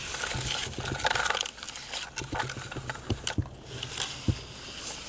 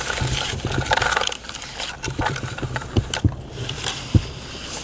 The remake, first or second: second